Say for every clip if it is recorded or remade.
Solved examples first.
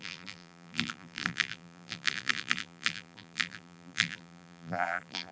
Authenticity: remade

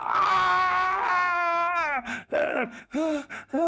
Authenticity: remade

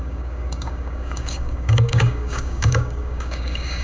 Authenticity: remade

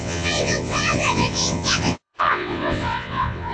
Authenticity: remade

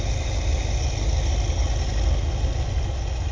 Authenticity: recorded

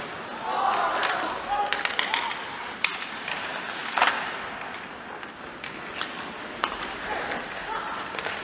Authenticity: recorded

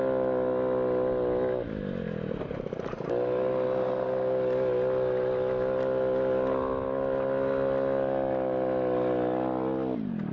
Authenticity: recorded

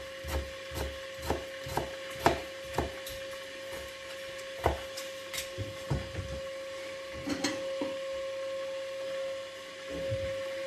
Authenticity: recorded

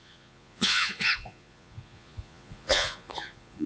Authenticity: remade